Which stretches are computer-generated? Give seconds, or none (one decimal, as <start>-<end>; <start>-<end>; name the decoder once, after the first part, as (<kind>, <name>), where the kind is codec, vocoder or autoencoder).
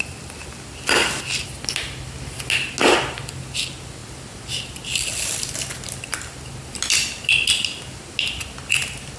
none